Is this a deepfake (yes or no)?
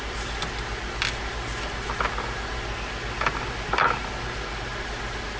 no